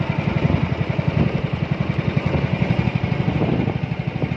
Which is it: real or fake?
real